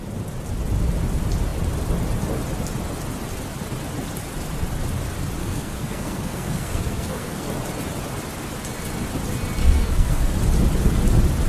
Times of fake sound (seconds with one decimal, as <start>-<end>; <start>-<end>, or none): 5.4-7.5; 9.6-10.3